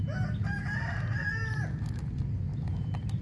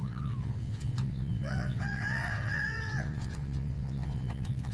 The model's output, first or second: second